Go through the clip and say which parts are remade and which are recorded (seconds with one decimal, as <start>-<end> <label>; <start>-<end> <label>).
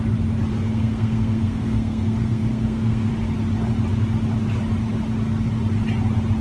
0.0-0.5 recorded; 0.5-3.1 remade; 3.1-6.4 recorded